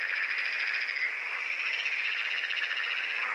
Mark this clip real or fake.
real